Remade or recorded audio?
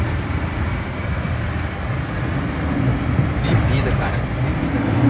remade